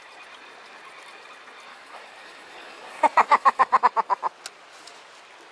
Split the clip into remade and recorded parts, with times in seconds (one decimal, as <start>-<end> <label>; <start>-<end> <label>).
0.0-1.7 recorded; 1.7-3.8 remade; 3.8-5.5 recorded